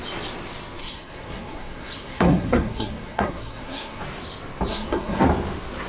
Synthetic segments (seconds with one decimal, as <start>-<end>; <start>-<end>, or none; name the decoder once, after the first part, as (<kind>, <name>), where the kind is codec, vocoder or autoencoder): 0.8-4.0 (codec, SNAC); 4.7-5.2